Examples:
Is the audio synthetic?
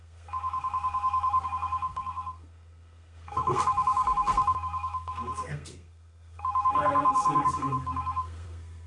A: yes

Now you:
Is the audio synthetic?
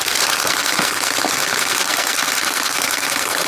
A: yes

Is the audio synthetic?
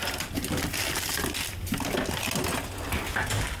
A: no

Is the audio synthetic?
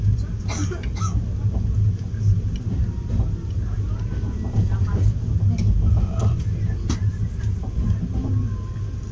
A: no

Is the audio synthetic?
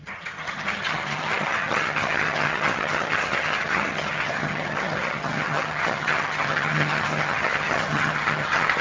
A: yes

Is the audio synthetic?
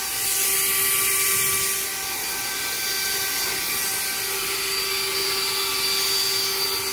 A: no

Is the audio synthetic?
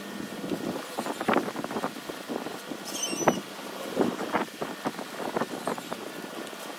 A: no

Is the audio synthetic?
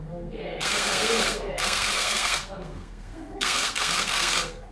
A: yes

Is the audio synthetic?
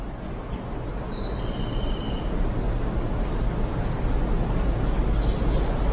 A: no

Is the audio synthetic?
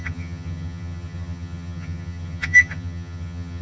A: yes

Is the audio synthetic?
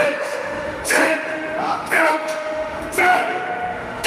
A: yes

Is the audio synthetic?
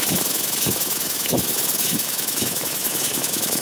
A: yes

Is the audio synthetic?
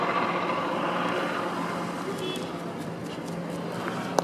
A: yes